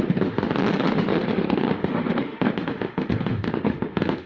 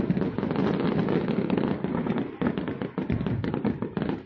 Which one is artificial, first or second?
first